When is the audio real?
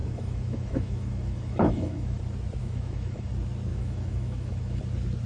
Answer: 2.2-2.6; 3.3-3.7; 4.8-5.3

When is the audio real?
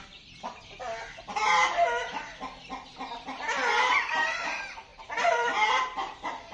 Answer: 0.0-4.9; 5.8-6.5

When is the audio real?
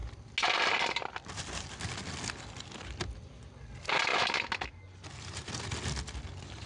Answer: 0.0-6.7